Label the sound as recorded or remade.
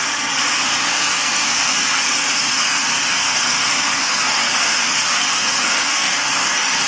remade